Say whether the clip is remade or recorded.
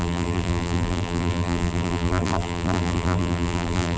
remade